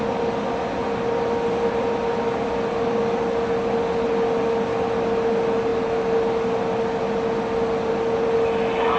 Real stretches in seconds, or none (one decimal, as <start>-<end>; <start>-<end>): 0.0-9.0